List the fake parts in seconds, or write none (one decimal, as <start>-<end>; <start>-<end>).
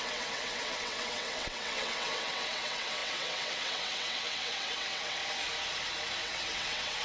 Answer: 0.0-5.2; 6.2-7.0